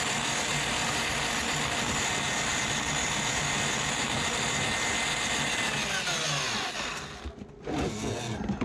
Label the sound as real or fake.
real